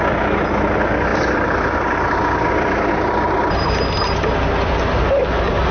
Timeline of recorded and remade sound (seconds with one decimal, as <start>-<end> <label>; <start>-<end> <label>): 0.0-1.1 recorded; 1.1-4.5 remade; 4.5-5.7 recorded